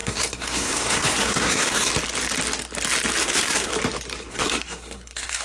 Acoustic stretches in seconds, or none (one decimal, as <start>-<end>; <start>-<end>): 1.9-3.2; 3.7-4.3

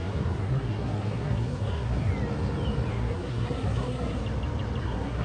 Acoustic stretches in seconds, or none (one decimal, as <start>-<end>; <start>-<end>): 2.1-2.9; 4.2-4.8

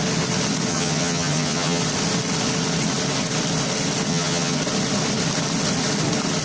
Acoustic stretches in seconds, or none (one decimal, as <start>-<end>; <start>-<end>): 0.0-0.7; 1.8-4.1; 4.6-6.4

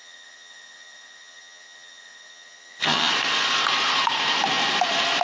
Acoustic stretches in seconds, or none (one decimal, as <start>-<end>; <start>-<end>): 3.1-5.2